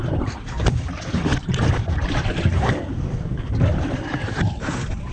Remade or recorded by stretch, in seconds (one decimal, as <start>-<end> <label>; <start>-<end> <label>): 0.0-0.7 remade; 0.7-1.3 recorded; 1.3-4.4 remade; 4.4-5.1 recorded